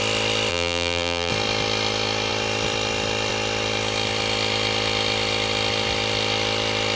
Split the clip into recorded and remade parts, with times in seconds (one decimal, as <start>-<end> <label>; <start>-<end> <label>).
0.0-0.5 recorded; 0.5-1.3 remade; 1.3-7.0 recorded